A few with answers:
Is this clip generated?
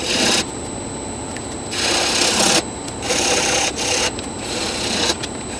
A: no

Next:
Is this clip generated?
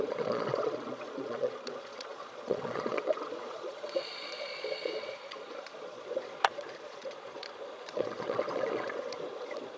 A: yes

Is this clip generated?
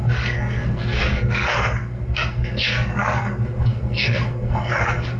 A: yes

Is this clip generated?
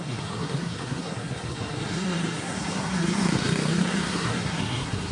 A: yes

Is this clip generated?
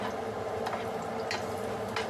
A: no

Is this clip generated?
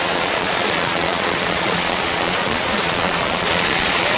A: yes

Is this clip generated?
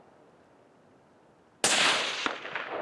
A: no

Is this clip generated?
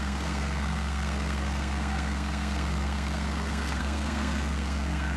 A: yes